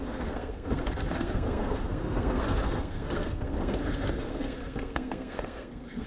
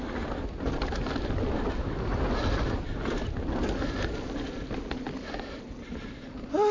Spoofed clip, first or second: first